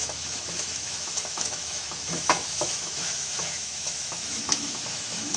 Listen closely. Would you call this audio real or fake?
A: fake